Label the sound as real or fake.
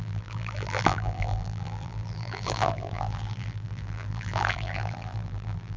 fake